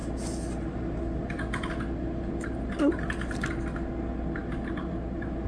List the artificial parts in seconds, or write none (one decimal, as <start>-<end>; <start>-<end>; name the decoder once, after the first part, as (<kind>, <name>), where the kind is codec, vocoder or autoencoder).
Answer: none